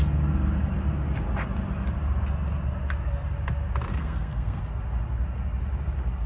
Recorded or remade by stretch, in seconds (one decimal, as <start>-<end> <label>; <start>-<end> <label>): 0.0-3.9 recorded; 3.9-4.6 remade; 4.6-6.3 recorded